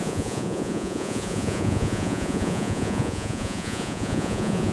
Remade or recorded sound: remade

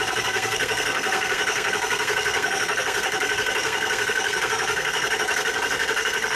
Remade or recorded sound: remade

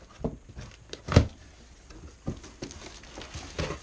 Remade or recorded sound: recorded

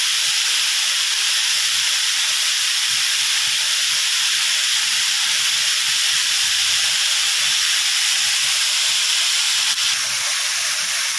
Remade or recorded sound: remade